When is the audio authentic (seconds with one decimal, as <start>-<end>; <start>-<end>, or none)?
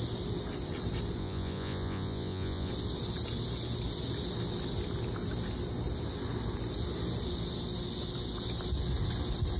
0.0-1.2; 2.7-9.6